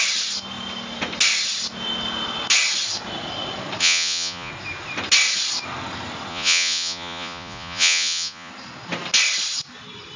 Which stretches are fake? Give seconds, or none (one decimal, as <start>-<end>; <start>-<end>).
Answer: 3.8-4.5; 6.3-8.5